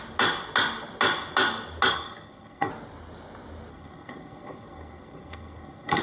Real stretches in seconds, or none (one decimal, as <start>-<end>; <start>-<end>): 0.0-1.9; 2.7-3.7